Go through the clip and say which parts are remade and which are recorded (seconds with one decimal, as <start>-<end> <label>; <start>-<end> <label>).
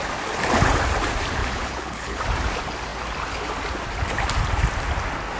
0.0-1.4 recorded; 1.4-2.2 remade; 2.2-5.4 recorded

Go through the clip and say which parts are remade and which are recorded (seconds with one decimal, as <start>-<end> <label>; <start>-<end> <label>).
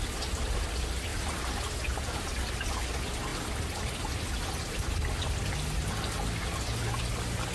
0.0-7.5 recorded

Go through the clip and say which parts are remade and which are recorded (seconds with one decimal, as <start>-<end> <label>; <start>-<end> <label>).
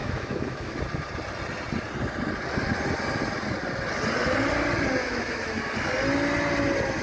0.0-0.8 remade; 0.8-5.0 recorded; 5.0-5.6 remade; 5.6-7.0 recorded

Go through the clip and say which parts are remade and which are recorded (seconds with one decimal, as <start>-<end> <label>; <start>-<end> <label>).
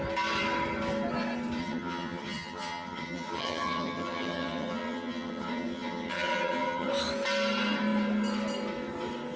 0.0-1.6 recorded; 1.6-6.9 remade; 6.9-9.4 recorded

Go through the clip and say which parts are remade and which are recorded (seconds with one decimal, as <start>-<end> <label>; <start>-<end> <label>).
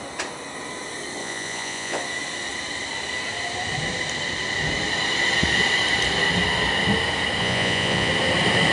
0.0-1.2 recorded; 1.2-2.0 remade; 2.0-7.4 recorded; 7.4-8.1 remade; 8.1-8.7 recorded